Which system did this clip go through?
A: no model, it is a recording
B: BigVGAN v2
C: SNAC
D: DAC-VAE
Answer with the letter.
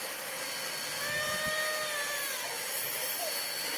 A